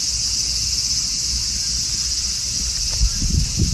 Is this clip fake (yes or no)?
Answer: no